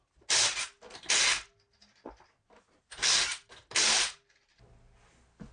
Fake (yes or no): no